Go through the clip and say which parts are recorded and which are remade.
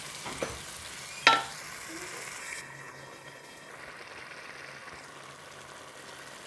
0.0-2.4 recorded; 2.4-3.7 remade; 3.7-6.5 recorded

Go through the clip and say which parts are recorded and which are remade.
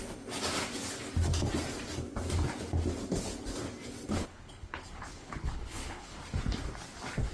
0.0-4.2 recorded; 4.2-6.2 remade; 6.2-7.3 recorded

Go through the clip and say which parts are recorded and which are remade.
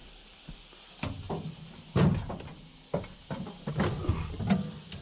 0.0-5.0 recorded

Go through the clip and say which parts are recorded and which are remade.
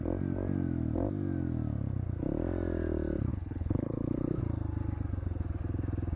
0.0-3.3 recorded; 3.3-4.4 remade; 4.4-6.2 recorded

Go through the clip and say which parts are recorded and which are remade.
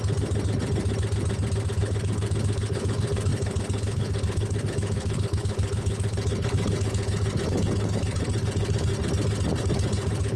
0.0-1.7 recorded; 1.7-8.9 remade; 8.9-9.6 recorded; 9.6-10.4 remade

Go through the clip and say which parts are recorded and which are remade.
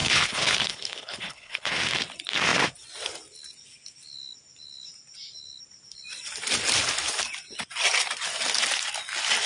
0.0-1.7 remade; 1.7-9.5 recorded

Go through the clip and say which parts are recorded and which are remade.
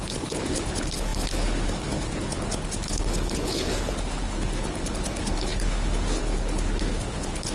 0.0-7.5 remade